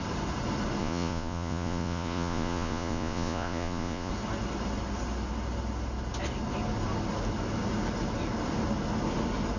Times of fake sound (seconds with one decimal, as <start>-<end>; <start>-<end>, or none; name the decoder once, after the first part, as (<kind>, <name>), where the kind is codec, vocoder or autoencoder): 0.8-4.1 (vocoder, Vocos)